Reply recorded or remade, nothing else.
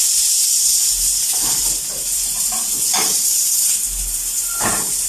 remade